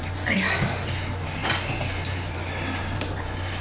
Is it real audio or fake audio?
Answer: real